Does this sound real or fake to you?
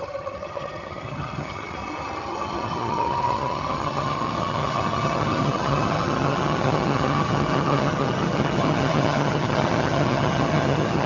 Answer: fake